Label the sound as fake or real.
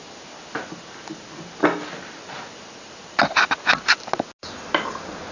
real